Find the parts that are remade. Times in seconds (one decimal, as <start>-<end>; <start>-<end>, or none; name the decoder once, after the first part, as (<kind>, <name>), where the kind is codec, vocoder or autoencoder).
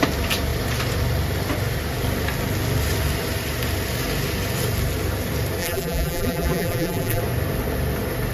5.6-7.2 (vocoder, BigVGAN v2)